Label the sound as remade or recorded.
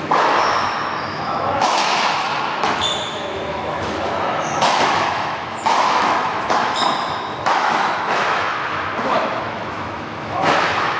remade